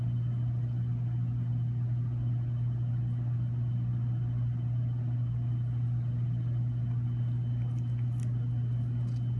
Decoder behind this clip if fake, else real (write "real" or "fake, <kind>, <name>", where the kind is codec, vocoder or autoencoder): real